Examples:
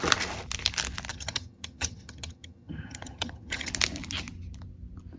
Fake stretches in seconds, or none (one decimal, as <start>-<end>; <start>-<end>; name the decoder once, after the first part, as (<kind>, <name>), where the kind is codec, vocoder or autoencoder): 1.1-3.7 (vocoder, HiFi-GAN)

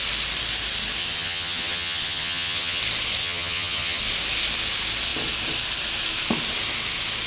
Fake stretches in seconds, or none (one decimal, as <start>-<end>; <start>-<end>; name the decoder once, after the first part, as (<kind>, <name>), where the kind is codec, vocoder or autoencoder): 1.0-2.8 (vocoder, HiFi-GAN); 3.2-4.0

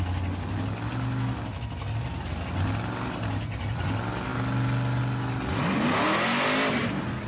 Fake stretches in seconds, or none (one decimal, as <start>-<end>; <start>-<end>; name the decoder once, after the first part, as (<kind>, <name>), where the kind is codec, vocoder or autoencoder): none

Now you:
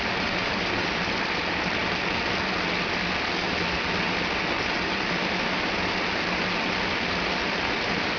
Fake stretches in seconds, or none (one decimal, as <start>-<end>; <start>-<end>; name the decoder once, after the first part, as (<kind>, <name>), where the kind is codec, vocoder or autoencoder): none

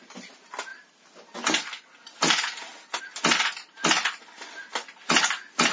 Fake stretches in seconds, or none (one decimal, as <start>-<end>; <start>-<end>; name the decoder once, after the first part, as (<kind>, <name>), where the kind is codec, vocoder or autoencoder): none

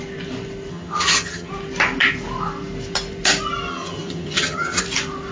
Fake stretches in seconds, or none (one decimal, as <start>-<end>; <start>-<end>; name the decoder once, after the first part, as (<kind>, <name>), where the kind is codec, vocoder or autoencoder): 0.7-1.5 (vocoder, HiFi-GAN); 3.7-4.8

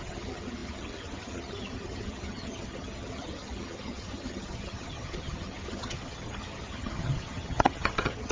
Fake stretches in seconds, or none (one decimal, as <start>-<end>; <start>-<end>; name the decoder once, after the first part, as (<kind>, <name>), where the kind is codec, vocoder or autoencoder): 0.0-8.3 (vocoder, HiFi-GAN)

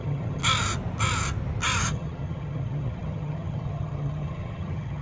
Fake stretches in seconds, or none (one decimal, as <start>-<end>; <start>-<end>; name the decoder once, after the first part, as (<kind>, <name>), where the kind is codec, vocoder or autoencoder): 0.0-0.4 (vocoder, HiFi-GAN); 1.8-5.0